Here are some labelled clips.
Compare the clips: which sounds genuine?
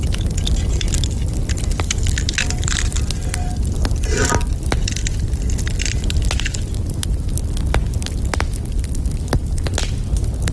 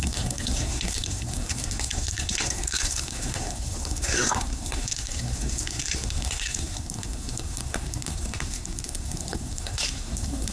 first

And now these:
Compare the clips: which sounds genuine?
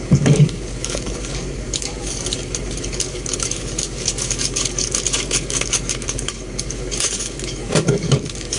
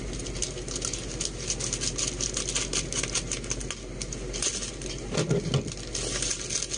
second